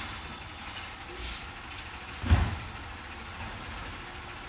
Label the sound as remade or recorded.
recorded